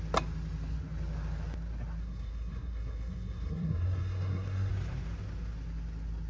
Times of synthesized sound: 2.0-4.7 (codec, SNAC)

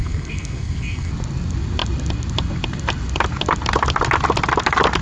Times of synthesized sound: 0.0-1.1 (codec, SNAC)

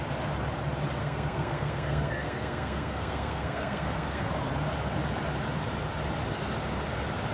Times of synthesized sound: 1.0-4.3 (codec, SNAC)